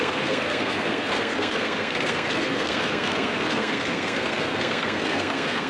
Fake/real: fake